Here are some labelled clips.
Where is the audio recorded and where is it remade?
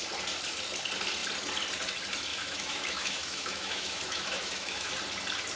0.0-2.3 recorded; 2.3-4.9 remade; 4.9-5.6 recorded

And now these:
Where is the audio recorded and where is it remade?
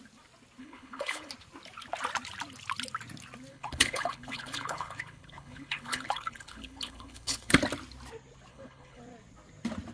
0.0-0.6 recorded; 0.6-1.3 remade; 1.3-3.5 recorded; 3.5-7.5 remade; 7.5-8.5 recorded; 8.5-9.0 remade; 9.0-9.9 recorded